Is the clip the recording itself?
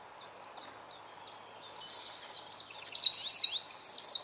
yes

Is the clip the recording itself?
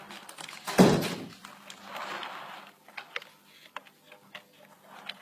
yes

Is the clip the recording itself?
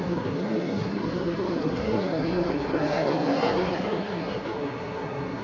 no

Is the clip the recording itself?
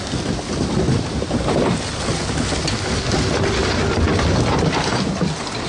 yes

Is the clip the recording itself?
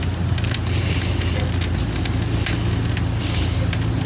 yes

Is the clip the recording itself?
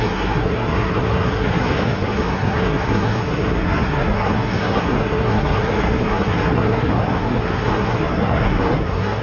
no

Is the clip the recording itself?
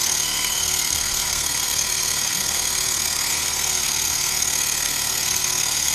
no